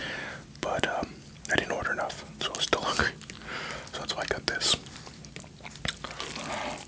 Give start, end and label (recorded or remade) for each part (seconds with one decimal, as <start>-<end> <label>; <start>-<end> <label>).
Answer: 0.0-6.9 recorded